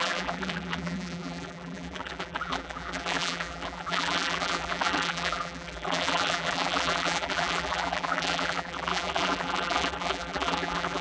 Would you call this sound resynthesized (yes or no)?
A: yes